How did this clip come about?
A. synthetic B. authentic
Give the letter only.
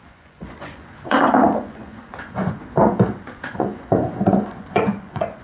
A